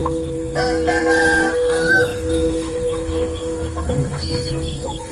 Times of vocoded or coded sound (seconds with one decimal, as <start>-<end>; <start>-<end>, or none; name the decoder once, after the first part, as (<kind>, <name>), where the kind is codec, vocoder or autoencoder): 0.0-5.1 (codec, SNAC)